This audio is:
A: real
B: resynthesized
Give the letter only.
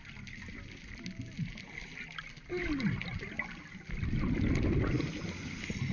A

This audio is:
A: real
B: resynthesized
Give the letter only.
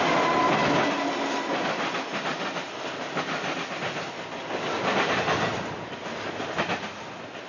A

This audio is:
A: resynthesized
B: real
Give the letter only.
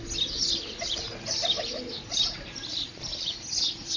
B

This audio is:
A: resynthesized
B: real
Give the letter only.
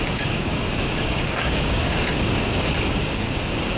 A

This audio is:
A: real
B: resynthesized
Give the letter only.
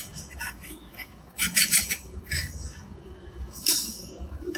B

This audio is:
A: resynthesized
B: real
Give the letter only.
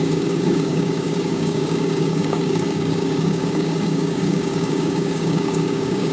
A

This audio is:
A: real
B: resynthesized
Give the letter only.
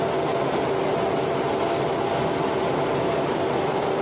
A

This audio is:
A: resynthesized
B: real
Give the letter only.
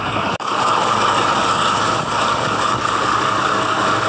A